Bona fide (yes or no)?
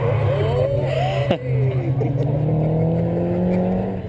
yes